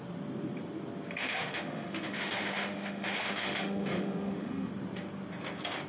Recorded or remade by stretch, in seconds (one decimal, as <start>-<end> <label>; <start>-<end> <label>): 0.0-1.2 recorded; 1.2-4.7 remade; 4.7-5.9 recorded